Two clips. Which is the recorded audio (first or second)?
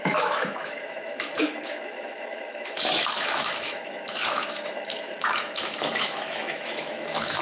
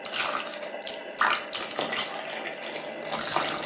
second